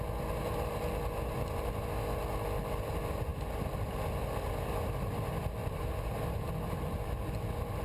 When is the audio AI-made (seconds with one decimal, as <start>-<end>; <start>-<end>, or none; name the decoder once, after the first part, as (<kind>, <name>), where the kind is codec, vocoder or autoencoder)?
5.6-6.5 (vocoder, BigVGAN v2)